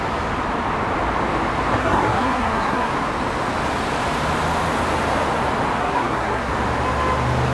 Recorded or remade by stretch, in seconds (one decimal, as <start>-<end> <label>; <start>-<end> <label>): 0.0-1.8 recorded; 1.8-2.9 remade; 2.9-5.8 recorded; 5.8-6.5 remade; 6.5-7.5 recorded